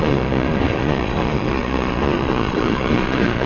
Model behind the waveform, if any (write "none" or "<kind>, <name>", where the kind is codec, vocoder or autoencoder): vocoder, Vocos